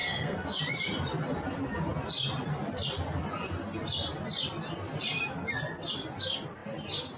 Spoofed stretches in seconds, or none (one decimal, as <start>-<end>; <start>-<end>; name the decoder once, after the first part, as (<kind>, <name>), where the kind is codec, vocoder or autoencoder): 0.0-0.6 (codec, SNAC)